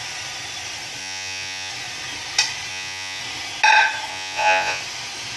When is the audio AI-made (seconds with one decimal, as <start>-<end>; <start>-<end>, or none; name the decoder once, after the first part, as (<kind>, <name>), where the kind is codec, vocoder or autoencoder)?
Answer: 1.0-1.7 (vocoder, Vocos); 2.7-3.2; 4.1-4.8